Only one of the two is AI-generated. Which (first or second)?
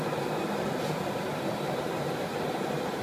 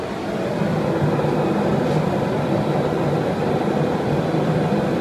first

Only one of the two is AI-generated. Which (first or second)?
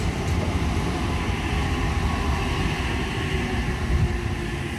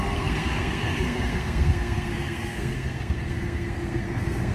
second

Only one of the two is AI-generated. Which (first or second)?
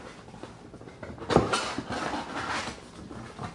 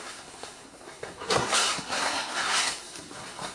second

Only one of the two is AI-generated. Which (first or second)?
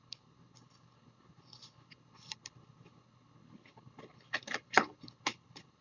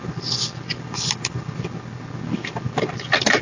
first